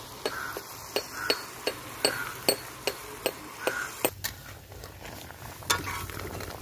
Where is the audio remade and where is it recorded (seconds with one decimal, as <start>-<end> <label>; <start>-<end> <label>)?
0.0-6.6 recorded